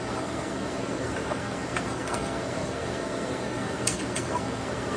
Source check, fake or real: fake